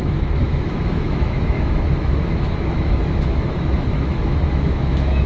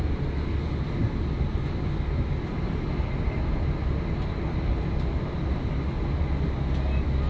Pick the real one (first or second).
second